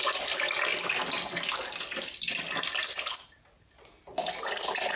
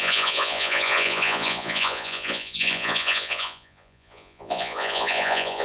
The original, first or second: first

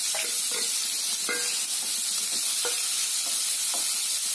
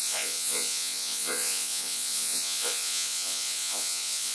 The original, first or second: first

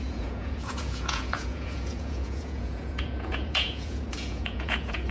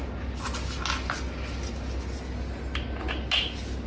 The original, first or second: second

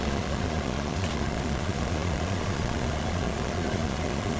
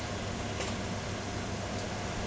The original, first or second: second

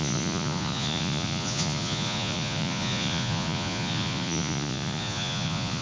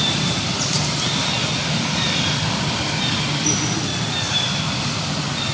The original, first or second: second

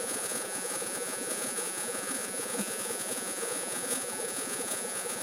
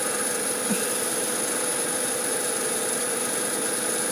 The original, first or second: second